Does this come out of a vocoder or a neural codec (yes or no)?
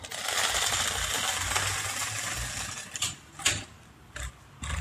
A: no